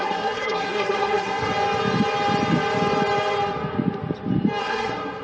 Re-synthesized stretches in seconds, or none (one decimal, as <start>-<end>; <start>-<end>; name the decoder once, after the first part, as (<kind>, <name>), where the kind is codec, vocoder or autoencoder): 0.0-1.5 (codec, SNAC); 4.6-5.2